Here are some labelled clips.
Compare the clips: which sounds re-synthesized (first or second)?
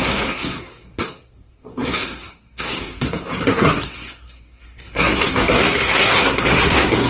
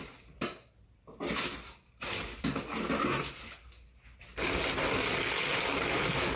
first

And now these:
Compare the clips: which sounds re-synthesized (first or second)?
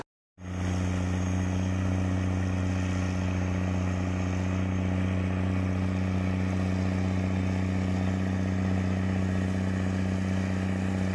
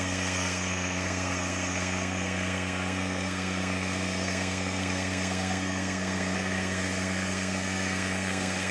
second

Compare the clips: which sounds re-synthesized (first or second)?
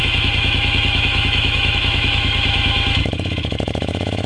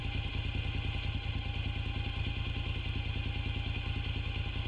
first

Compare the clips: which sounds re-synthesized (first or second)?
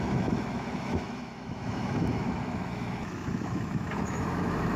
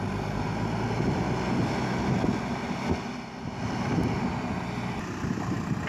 first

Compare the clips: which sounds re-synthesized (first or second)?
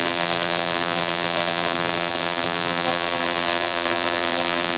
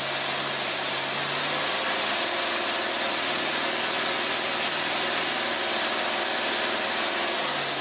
first